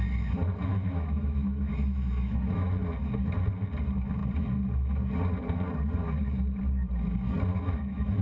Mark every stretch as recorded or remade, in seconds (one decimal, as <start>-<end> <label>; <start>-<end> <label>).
0.0-0.7 recorded; 0.7-2.7 remade; 2.7-7.5 recorded; 7.5-8.2 remade

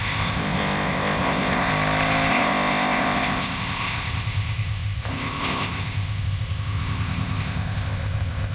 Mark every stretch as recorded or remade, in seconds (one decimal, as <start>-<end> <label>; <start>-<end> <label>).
0.0-1.7 remade; 1.7-2.3 recorded; 2.3-8.5 remade